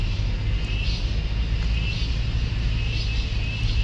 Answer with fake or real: real